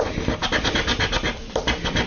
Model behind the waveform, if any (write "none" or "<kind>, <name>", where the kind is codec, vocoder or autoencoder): vocoder, BigVGAN v2